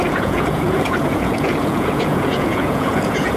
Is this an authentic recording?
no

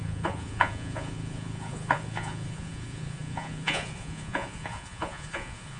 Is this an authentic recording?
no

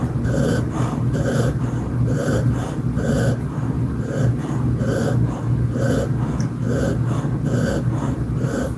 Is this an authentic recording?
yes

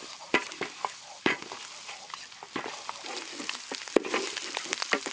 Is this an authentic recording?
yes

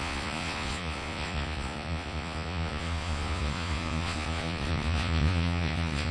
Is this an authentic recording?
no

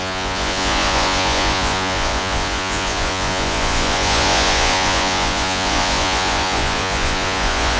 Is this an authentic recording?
no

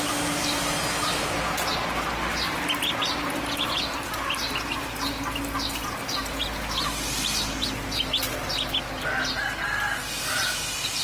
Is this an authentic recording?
yes